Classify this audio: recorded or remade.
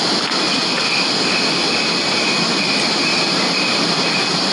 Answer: recorded